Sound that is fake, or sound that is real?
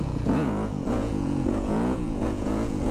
fake